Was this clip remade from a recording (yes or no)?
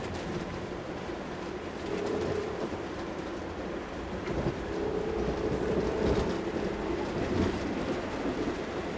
yes